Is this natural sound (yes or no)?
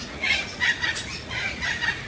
no